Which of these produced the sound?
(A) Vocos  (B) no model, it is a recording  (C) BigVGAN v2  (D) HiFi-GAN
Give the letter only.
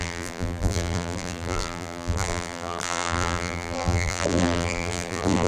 C